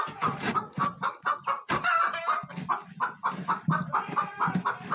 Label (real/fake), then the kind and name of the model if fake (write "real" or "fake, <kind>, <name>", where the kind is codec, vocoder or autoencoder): real